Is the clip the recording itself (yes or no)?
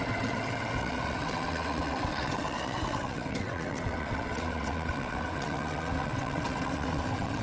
no